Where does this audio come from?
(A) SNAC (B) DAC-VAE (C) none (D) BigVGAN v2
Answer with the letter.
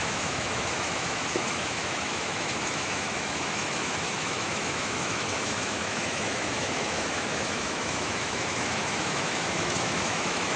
B